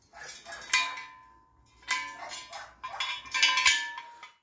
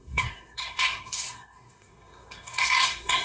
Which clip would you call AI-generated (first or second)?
second